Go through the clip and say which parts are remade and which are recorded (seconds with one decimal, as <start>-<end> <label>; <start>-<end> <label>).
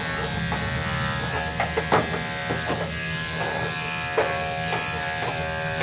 0.0-5.8 recorded